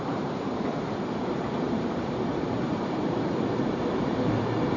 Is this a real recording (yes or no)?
no